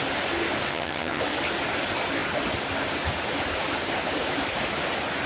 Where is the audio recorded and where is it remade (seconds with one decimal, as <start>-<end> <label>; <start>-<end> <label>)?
0.0-0.7 recorded; 0.7-1.2 remade; 1.2-5.3 recorded